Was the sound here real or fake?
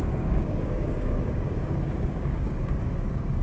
fake